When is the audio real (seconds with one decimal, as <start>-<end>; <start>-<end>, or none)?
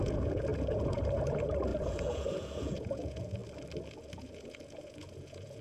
3.4-4.0